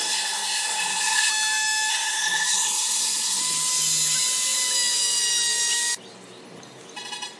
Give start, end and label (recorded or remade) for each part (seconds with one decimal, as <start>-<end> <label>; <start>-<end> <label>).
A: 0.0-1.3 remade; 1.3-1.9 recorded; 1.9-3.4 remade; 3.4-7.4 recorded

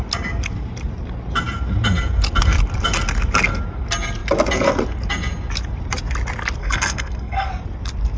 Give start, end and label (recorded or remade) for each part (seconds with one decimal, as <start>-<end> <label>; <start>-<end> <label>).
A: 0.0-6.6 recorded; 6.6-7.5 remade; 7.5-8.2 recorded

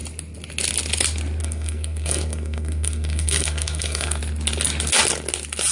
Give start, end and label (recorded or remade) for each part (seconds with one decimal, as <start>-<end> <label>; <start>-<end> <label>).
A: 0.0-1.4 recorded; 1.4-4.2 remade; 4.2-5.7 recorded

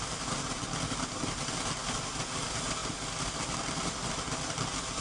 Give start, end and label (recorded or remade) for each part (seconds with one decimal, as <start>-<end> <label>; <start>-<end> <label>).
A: 0.0-5.0 recorded

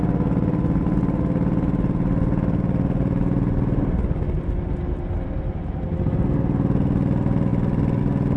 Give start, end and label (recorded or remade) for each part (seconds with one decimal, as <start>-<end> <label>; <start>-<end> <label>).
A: 0.0-8.4 recorded

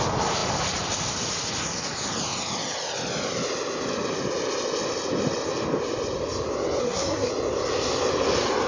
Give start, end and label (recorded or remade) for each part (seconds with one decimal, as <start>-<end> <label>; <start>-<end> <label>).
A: 0.0-6.8 recorded; 6.8-7.3 remade; 7.3-8.7 recorded